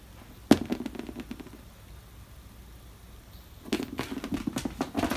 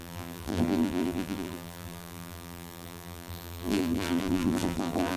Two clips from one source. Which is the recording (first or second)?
first